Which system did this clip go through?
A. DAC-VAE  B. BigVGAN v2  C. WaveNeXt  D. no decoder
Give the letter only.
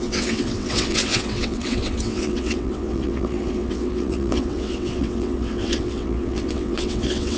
C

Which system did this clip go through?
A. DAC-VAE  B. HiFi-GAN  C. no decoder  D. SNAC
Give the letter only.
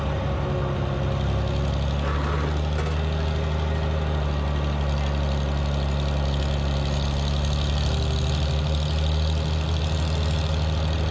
C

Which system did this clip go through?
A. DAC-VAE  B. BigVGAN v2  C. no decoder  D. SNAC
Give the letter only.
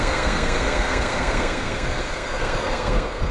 D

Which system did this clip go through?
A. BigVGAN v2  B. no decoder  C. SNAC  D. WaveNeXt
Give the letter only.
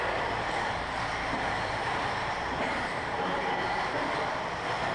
A